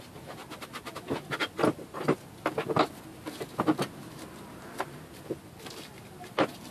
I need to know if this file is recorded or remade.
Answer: recorded